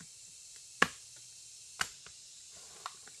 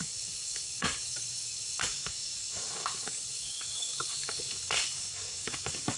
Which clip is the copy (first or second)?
second